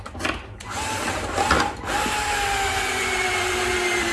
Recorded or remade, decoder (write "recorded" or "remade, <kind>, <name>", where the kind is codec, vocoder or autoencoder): recorded